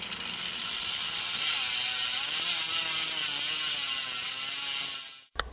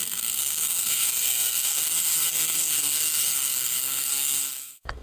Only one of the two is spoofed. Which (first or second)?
second